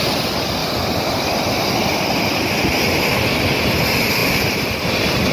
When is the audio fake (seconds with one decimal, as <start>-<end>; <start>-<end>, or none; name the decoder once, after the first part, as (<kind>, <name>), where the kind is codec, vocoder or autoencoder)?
none